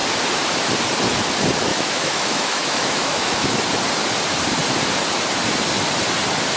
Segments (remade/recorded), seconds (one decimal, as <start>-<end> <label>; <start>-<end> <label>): 0.0-1.7 recorded; 1.7-3.6 remade; 3.6-6.6 recorded